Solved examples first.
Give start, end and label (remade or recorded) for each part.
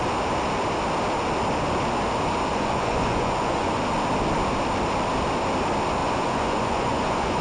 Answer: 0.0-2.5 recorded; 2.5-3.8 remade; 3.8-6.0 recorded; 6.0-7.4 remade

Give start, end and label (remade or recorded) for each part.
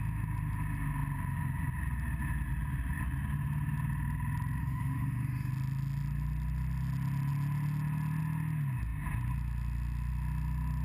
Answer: 0.0-4.6 recorded; 4.6-5.5 remade; 5.5-10.8 recorded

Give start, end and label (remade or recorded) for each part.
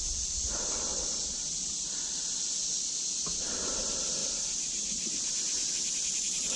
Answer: 0.0-6.6 recorded